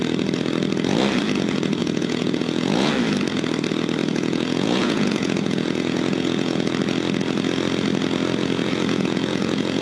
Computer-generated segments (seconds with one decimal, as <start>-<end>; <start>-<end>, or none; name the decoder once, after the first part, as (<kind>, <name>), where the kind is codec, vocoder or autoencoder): 1.8-2.9 (vocoder, Vocos); 4.0-6.7; 8.6-9.8